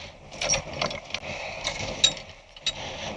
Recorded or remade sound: recorded